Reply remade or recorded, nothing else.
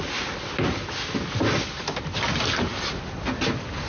recorded